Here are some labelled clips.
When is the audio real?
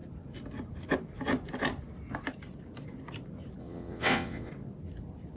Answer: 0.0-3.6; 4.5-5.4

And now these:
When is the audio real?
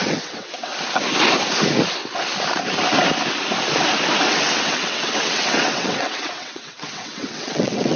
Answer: 0.7-4.2